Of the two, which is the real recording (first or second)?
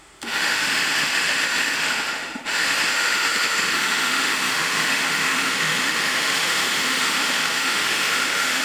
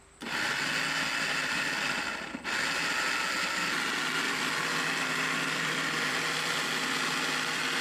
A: second